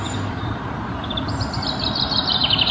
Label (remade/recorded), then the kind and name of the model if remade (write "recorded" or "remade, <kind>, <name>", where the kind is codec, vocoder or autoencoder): remade, vocoder, BigVGAN v2